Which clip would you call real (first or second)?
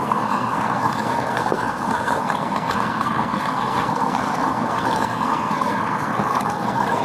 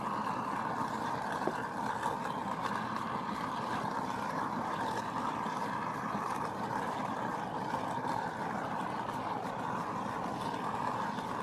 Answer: second